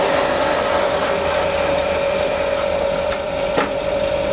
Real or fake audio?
real